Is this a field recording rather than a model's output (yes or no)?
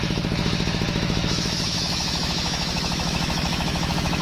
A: no